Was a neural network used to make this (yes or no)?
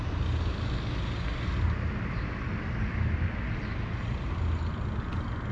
no